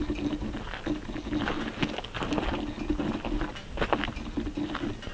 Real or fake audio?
real